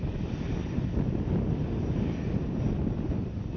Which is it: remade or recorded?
recorded